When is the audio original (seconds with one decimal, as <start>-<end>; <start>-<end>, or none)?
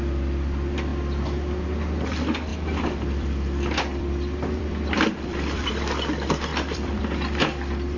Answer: 0.0-2.5; 5.7-6.5; 7.0-8.0